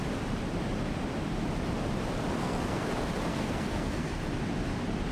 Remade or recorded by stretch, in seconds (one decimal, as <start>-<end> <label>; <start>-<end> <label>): 0.0-2.4 recorded; 2.4-2.9 remade; 2.9-3.3 recorded; 3.3-4.2 remade; 4.2-5.1 recorded